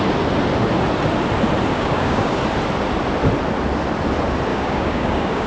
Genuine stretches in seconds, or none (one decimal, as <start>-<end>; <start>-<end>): 0.0-1.7; 2.4-4.5